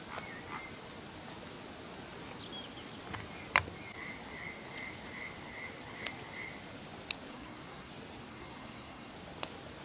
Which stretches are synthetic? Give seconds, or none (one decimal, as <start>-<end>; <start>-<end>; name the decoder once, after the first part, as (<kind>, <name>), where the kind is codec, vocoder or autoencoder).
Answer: 7.3-7.9 (codec, SNAC); 8.3-9.1